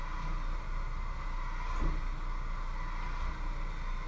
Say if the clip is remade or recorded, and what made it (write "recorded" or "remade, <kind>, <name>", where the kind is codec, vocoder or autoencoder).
recorded